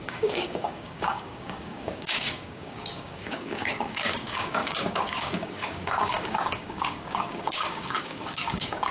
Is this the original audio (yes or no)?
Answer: no